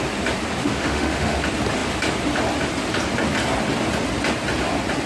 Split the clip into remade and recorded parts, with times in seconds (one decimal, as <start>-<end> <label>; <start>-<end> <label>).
0.0-0.6 recorded; 0.6-1.4 remade; 1.4-5.1 recorded